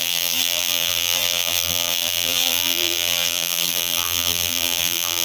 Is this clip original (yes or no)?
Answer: no